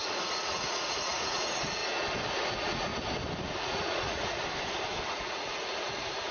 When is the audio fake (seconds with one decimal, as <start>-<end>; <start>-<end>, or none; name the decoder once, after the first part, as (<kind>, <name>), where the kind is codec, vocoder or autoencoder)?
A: 0.0-1.8 (vocoder, Vocos); 2.4-2.9; 3.6-4.4; 5.1-6.3